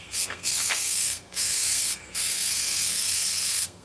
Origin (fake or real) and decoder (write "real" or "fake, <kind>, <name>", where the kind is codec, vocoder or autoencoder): fake, codec, SNAC